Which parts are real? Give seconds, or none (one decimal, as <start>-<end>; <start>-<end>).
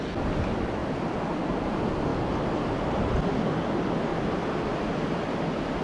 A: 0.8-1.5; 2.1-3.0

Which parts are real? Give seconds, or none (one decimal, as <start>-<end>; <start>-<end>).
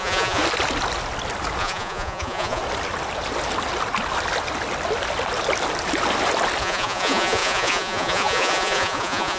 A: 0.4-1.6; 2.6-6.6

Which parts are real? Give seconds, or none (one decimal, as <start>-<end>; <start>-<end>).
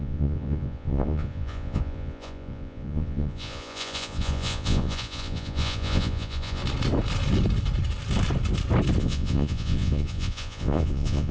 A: 6.6-9.0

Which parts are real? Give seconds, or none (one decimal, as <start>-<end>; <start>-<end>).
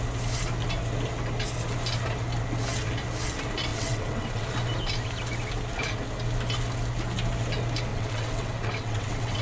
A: 0.0-3.7; 4.5-7.9